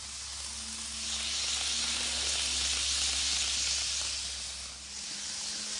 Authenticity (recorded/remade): recorded